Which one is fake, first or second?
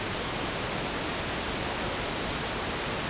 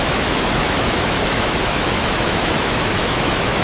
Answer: second